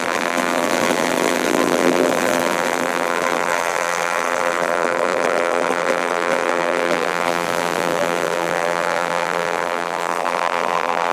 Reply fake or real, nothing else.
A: fake